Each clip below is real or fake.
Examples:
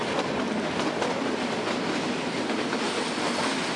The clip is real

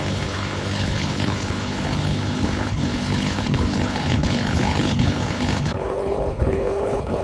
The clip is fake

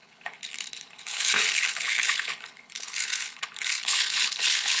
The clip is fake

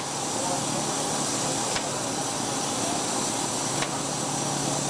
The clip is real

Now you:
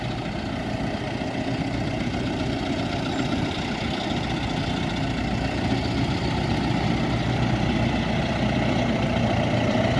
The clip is real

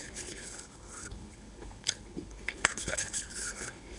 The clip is fake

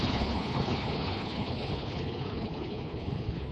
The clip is fake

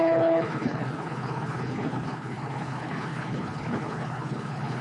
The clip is fake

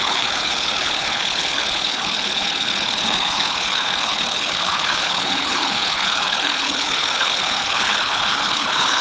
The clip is fake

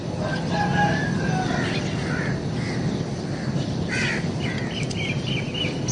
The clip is real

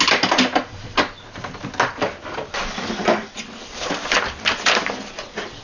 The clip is real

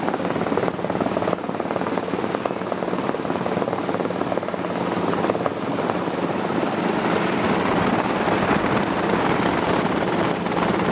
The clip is real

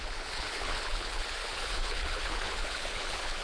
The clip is fake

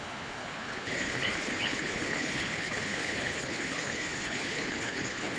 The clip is fake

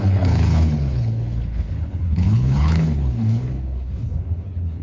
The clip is fake